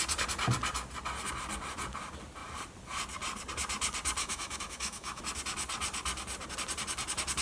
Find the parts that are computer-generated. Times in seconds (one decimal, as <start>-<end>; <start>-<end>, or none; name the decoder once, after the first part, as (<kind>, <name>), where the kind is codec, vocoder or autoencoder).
4.2-5.2 (autoencoder, DAC-VAE)